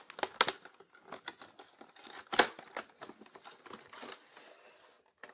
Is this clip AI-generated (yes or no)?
no